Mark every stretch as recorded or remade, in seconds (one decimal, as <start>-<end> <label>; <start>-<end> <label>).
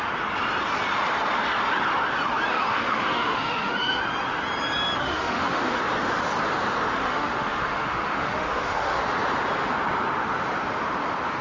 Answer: 0.0-2.5 recorded; 2.5-4.0 remade; 4.0-5.0 recorded; 5.0-5.8 remade; 5.8-7.0 recorded; 7.0-9.0 remade; 9.0-11.4 recorded